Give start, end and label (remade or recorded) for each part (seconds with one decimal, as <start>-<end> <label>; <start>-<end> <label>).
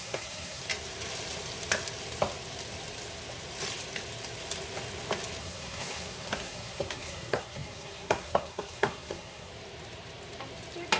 0.0-0.6 remade; 0.6-5.4 recorded; 5.4-9.5 remade; 9.5-11.0 recorded